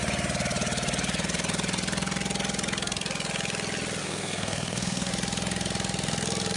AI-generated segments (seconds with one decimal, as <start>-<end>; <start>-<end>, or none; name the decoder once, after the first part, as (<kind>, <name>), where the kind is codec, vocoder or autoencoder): 4.0-5.1 (codec, SNAC)